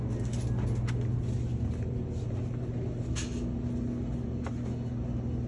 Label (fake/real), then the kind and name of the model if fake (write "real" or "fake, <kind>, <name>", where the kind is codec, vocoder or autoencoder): real